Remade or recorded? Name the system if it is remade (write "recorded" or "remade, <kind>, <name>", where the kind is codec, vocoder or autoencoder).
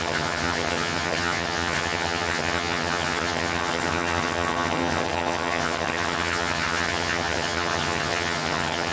remade, vocoder, HiFi-GAN